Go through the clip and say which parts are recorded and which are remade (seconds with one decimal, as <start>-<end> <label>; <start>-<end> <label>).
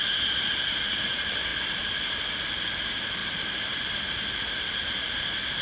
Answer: 0.0-5.6 recorded